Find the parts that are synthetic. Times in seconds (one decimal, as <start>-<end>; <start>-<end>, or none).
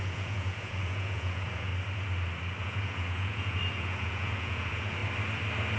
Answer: 0.0-1.7; 2.6-5.0